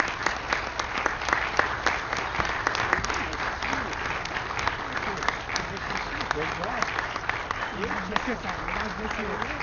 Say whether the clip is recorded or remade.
recorded